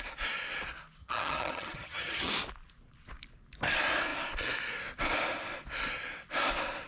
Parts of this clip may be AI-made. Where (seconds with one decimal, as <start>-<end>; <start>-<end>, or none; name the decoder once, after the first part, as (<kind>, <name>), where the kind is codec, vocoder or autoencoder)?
1.0-2.3 (vocoder, HiFi-GAN)